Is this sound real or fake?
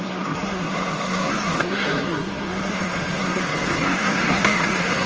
fake